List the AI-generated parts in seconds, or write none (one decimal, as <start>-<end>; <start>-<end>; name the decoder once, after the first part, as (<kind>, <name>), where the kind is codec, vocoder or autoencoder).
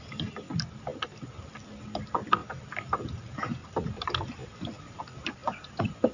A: 0.0-2.4 (vocoder, BigVGAN v2); 3.0-4.4; 5.0-6.1